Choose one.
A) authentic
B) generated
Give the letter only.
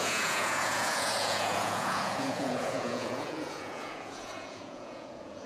B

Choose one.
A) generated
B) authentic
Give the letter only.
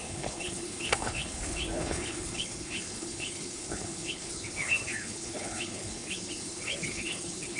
A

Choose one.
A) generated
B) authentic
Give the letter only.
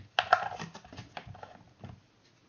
B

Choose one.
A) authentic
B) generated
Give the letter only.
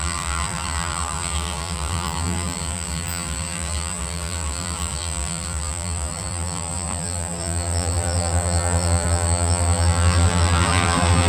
B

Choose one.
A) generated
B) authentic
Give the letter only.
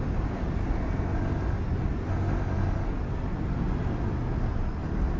B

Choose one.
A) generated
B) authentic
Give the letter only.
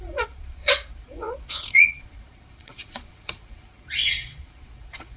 A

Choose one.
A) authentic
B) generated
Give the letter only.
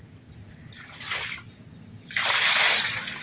A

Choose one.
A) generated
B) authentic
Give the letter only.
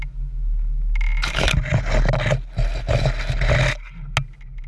B